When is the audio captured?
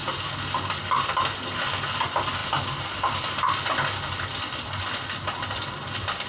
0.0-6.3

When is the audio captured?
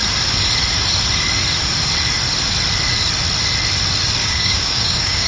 0.0-4.2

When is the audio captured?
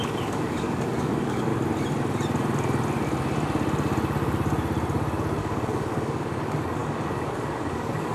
1.5-5.4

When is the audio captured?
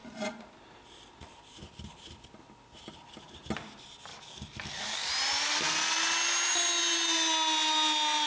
0.0-4.1; 5.1-8.3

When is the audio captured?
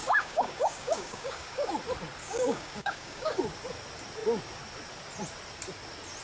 1.7-2.2; 3.4-6.2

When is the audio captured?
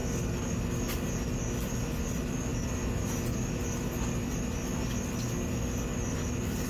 0.0-6.7